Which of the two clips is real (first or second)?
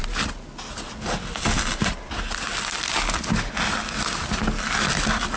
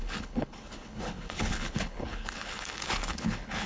first